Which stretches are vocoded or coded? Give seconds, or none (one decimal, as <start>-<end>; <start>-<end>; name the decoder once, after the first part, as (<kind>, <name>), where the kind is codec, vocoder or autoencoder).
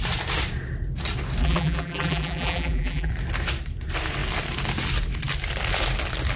1.4-3.1 (vocoder, BigVGAN v2)